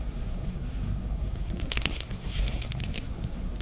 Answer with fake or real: fake